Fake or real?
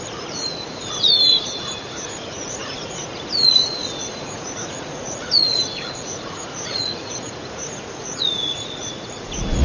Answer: fake